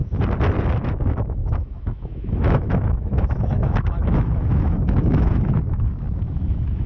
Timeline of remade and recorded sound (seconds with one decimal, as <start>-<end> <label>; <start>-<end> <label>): 0.0-0.9 recorded; 0.9-6.9 remade